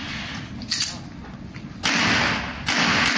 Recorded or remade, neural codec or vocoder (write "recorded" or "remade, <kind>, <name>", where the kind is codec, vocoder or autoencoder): recorded